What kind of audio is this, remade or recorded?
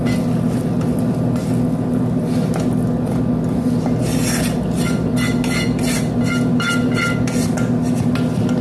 recorded